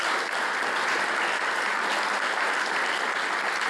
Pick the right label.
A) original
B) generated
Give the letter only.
A